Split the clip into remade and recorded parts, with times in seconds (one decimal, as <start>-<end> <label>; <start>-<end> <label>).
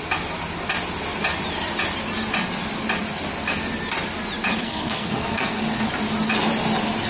0.0-4.6 recorded; 4.6-5.6 remade; 5.6-7.1 recorded